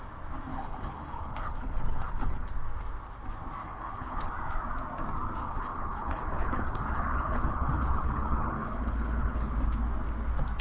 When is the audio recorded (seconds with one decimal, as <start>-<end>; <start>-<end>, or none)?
0.0-0.5; 2.5-3.6; 4.3-5.4; 9.5-10.6